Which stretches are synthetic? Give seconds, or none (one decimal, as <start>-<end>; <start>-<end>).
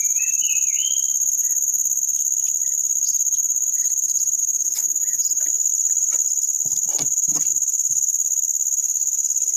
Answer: 4.4-5.7